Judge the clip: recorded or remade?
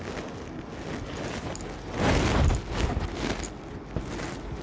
recorded